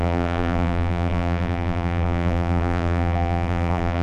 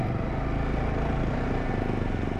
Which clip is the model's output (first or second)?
first